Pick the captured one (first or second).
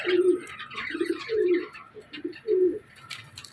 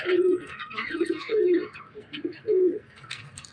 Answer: first